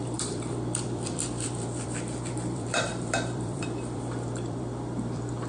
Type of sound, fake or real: fake